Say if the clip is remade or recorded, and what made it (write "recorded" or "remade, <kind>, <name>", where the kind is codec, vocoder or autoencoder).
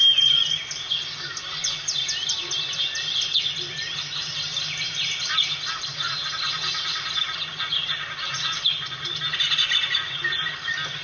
recorded